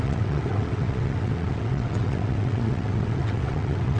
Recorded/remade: remade